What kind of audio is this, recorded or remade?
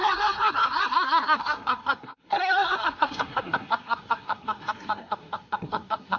remade